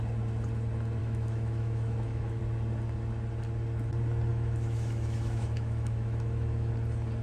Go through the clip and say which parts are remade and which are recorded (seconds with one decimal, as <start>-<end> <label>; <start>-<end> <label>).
0.0-1.0 recorded; 1.0-2.4 remade; 2.4-4.3 recorded; 4.3-6.7 remade; 6.7-7.2 recorded